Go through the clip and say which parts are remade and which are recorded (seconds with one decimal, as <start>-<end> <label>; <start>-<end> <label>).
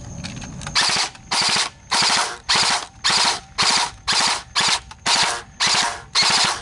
0.0-3.7 remade; 3.7-6.6 recorded